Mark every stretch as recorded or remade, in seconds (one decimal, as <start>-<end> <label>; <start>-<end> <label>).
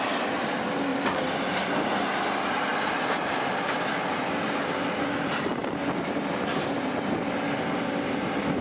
0.0-0.9 recorded; 0.9-2.0 remade; 2.0-2.7 recorded; 2.7-3.4 remade; 3.4-8.6 recorded